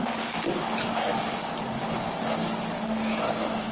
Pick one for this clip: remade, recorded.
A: remade